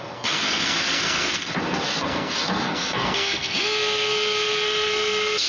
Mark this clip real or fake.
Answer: fake